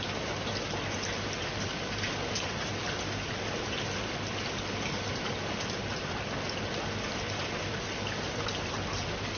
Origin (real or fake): real